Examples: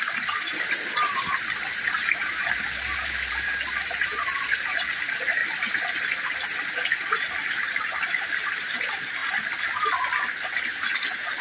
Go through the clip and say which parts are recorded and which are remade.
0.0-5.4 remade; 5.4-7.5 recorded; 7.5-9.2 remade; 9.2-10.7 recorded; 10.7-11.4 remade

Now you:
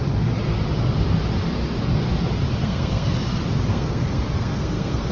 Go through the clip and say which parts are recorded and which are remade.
0.0-2.6 recorded; 2.6-3.1 remade; 3.1-3.7 recorded; 3.7-5.1 remade